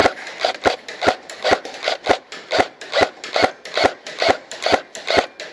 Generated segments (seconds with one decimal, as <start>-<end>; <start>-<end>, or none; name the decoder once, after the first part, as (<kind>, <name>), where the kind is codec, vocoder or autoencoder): none